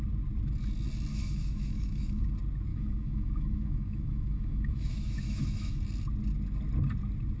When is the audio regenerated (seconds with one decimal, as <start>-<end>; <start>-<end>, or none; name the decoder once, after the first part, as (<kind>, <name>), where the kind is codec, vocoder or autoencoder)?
1.1-2.3 (autoencoder, DAC-VAE); 2.7-5.8